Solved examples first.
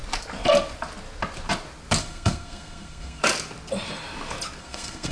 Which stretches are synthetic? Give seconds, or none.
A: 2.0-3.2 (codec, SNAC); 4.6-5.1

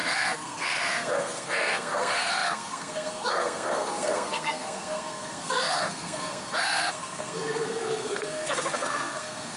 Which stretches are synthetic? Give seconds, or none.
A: 0.0-9.6 (codec, SNAC)

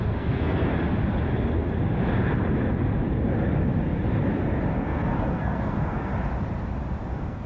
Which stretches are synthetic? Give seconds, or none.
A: 0.0-0.7 (codec, SNAC); 4.7-6.1; 7.1-7.5

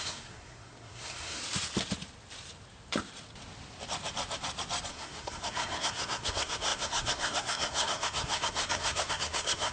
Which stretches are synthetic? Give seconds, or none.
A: 0.0-1.4 (codec, SNAC); 4.9-9.7

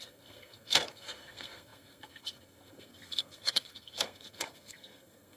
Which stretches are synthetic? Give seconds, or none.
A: 0.0-5.4 (codec, SNAC)

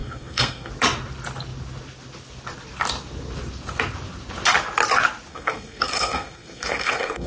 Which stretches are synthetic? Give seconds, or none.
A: 0.0-0.7 (codec, SNAC); 5.3-7.3